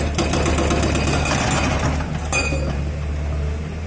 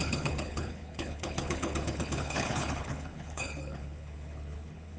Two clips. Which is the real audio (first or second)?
first